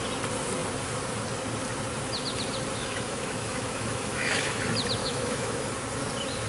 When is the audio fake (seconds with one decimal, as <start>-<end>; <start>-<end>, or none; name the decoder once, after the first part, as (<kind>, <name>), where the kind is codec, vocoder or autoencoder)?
2.8-4.6 (autoencoder, DAC-VAE); 5.0-5.7